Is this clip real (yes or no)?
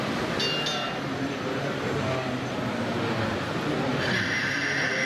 yes